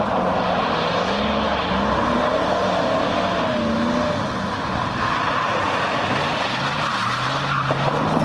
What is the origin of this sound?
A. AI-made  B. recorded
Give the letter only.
B